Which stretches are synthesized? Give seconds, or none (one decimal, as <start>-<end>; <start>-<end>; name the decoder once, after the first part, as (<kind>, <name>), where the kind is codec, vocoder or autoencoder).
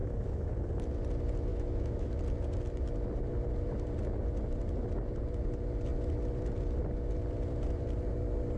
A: 0.0-0.5 (autoencoder, DAC-VAE); 1.5-2.2